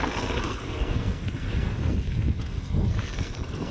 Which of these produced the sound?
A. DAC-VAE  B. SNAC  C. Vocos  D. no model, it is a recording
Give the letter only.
B